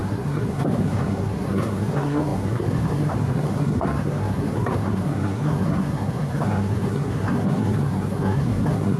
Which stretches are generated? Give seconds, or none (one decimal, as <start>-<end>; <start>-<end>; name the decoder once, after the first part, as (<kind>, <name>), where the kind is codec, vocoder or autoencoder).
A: 0.0-9.0 (codec, SNAC)